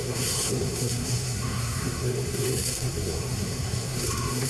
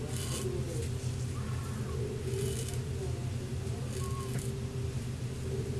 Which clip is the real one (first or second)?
second